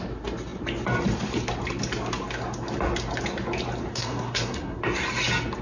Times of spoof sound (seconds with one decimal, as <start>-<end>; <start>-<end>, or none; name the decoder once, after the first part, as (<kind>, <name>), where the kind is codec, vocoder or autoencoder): 3.9-4.8 (codec, SNAC)